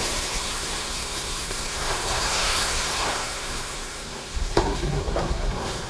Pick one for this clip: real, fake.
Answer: fake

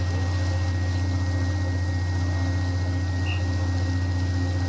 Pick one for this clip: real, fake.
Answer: real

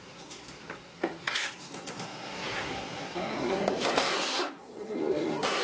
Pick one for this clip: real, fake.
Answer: fake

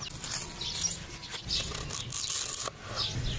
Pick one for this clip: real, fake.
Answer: real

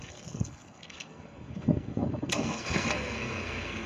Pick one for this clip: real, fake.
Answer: fake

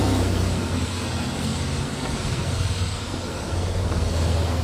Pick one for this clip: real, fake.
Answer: fake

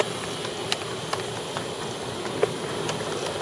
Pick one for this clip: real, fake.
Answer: real